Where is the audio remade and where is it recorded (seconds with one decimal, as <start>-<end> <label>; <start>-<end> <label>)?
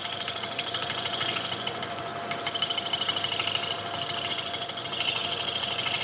0.0-2.1 remade; 2.1-4.3 recorded; 4.3-6.0 remade